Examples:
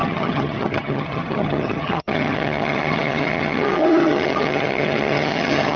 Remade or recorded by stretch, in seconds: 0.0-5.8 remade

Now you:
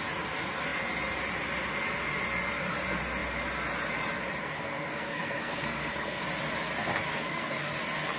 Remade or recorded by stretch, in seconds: 0.0-4.4 recorded; 4.4-6.2 remade; 6.2-7.1 recorded; 7.1-7.7 remade; 7.7-8.2 recorded

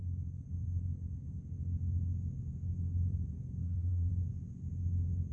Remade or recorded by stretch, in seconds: 0.0-3.6 recorded; 3.6-4.1 remade; 4.1-5.3 recorded

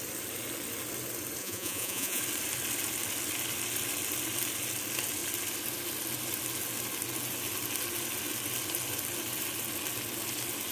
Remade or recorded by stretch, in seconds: 0.0-1.4 recorded; 1.4-2.2 remade; 2.2-10.7 recorded

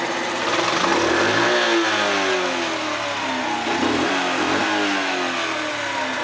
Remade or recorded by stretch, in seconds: 0.0-6.2 recorded